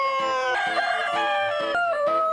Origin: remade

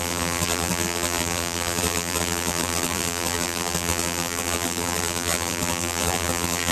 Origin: remade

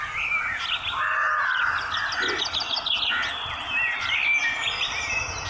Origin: recorded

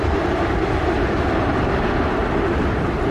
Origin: remade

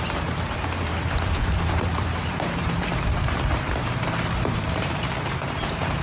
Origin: remade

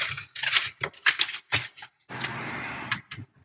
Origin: recorded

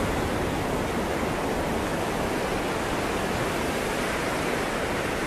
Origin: recorded